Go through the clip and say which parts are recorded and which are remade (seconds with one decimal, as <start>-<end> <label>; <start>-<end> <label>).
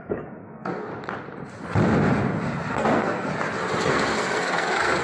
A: 0.0-0.9 remade; 0.9-2.7 recorded; 2.7-3.3 remade; 3.3-3.9 recorded; 3.9-5.0 remade